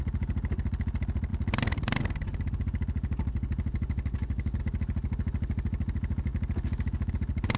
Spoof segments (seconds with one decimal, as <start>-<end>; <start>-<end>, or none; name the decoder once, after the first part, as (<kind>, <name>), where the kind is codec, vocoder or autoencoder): none